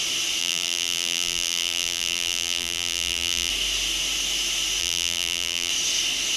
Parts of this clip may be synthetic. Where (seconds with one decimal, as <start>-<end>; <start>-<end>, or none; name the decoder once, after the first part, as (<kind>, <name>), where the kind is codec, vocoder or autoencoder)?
0.4-3.5 (vocoder, BigVGAN v2); 4.8-5.7